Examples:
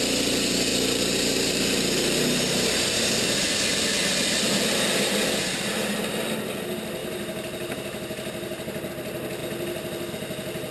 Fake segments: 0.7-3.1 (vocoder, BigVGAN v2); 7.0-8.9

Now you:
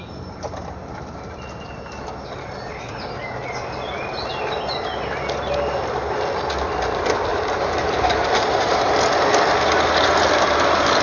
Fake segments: 7.3-8.9 (vocoder, BigVGAN v2)

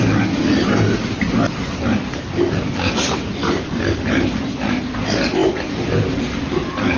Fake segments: none